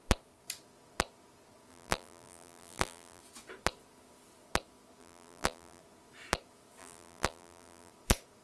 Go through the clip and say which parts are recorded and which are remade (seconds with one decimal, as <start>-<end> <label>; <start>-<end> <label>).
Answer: 0.0-1.7 recorded; 1.7-3.2 remade; 3.2-5.0 recorded; 5.0-5.8 remade; 5.8-6.8 recorded; 6.8-7.9 remade; 7.9-8.4 recorded